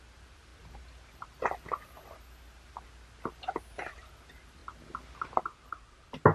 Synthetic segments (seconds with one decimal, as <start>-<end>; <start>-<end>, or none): none